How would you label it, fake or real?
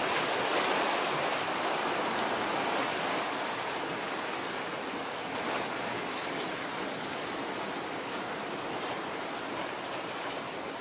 real